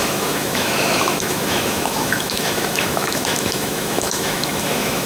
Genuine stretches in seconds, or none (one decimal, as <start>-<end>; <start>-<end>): none